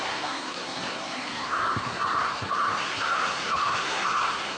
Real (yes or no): no